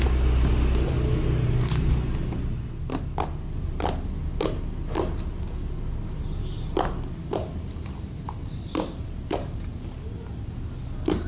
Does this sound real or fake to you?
real